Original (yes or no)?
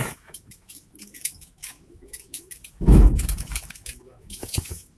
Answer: no